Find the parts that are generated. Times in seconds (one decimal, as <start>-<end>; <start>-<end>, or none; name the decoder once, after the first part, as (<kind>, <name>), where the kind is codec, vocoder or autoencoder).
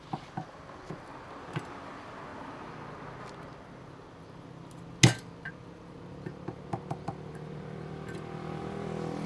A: none